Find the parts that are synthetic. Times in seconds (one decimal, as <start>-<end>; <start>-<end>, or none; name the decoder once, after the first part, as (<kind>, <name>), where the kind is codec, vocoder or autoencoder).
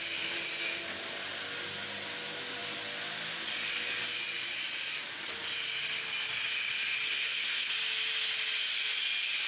7.1-7.7 (codec, SNAC)